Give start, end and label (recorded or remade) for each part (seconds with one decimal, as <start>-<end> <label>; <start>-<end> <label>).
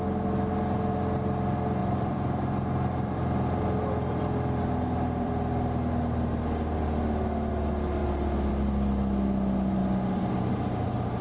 0.0-1.8 recorded; 1.8-7.0 remade; 7.0-8.0 recorded; 8.0-8.5 remade; 8.5-11.2 recorded